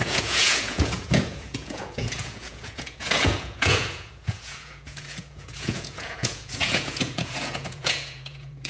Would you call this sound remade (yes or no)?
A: yes